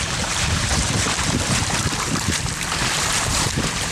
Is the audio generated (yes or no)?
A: yes